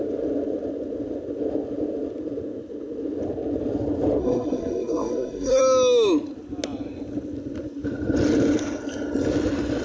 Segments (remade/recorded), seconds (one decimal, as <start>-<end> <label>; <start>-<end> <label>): 0.0-4.2 recorded; 4.2-5.6 remade; 5.6-9.8 recorded